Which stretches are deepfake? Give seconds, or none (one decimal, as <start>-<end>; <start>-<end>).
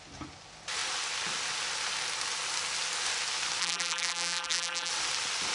3.6-4.9